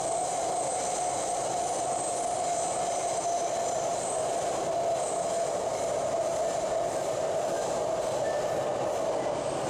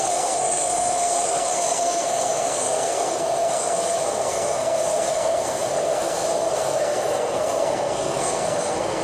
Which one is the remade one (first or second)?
second